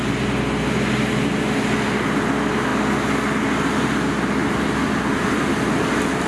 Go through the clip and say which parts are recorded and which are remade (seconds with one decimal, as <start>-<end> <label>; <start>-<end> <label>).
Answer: 0.0-6.3 recorded